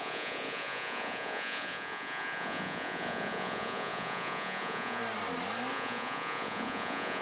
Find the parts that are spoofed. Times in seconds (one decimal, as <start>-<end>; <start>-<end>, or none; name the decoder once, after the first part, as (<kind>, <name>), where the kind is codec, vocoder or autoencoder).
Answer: 0.0-5.0 (vocoder, Vocos); 5.7-7.2